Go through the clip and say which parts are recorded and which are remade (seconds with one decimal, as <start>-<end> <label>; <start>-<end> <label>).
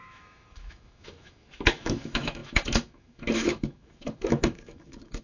0.0-5.2 remade